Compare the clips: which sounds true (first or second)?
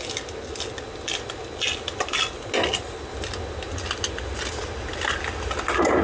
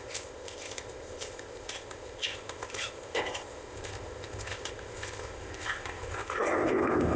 first